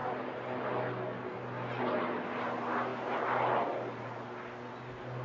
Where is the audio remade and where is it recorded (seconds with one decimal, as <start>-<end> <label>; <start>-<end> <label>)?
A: 0.0-5.2 recorded